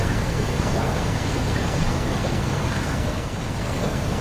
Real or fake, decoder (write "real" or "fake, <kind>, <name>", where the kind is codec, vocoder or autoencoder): fake, codec, SNAC